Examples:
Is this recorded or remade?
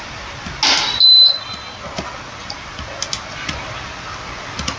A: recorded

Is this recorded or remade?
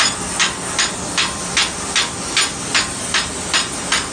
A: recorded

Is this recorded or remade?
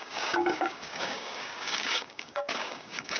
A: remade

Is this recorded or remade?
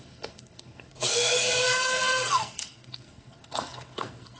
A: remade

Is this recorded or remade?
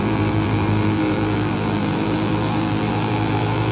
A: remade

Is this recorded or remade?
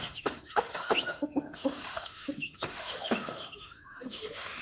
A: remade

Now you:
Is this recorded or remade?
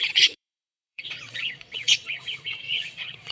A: remade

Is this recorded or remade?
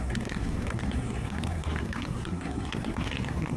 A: remade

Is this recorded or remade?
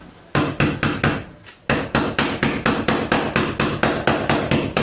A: recorded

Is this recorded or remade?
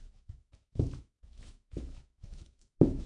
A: remade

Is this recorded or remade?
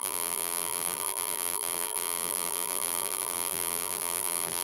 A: remade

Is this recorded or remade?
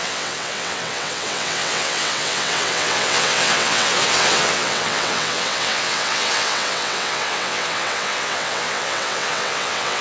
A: remade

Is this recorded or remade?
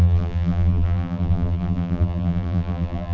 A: remade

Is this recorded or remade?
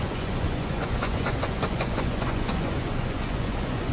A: remade